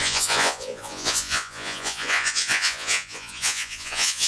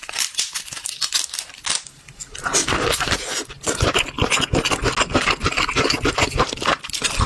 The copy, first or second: first